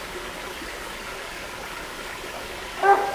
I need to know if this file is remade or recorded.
remade